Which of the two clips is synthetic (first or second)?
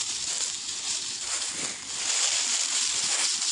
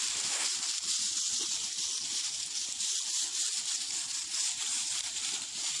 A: second